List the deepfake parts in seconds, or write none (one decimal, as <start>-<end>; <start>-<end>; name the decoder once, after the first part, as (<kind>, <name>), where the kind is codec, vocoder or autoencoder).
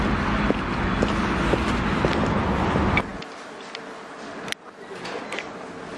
none